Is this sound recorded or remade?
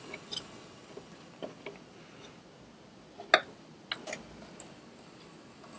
recorded